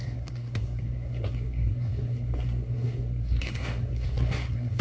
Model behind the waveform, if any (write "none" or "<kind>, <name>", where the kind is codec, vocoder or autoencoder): codec, SNAC